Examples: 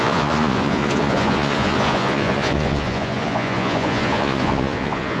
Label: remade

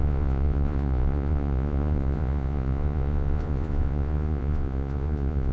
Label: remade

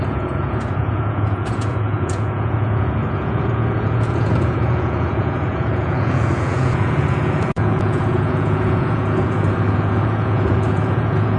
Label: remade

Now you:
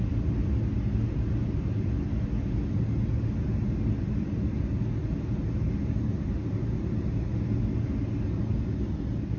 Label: recorded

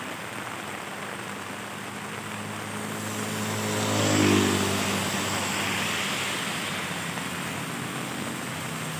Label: recorded